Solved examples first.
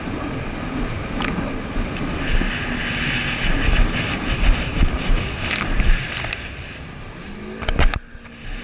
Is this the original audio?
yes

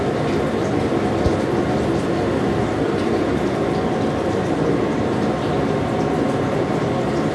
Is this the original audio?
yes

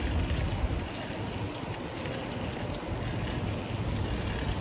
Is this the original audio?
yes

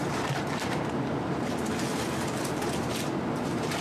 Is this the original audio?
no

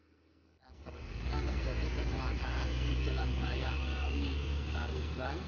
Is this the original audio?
no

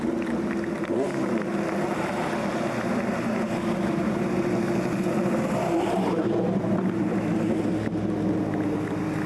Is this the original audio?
yes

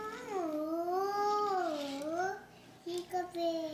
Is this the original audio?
yes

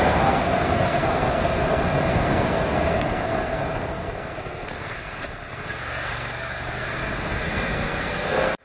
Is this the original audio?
no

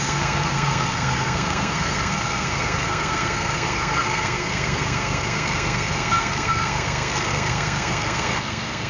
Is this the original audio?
no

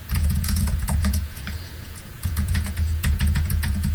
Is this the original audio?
no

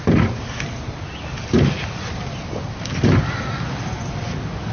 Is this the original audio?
yes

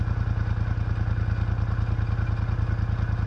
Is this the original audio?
yes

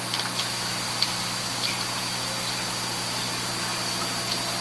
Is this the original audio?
yes